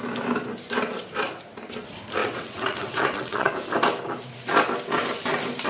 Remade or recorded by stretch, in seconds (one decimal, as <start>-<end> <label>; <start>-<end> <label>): 0.0-2.2 recorded; 2.2-3.5 remade; 3.5-5.7 recorded